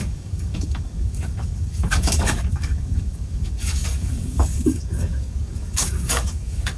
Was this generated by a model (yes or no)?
yes